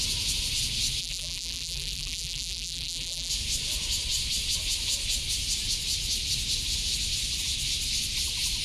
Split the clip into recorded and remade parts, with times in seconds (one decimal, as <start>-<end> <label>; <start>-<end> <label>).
0.0-1.0 recorded; 1.0-3.3 remade; 3.3-8.6 recorded